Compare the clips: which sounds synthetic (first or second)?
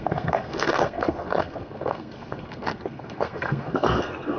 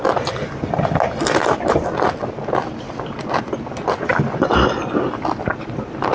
first